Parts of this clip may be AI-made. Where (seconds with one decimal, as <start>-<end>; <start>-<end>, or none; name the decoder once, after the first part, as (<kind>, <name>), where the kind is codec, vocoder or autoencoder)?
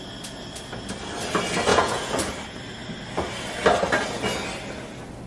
1.7-2.2 (vocoder, Vocos)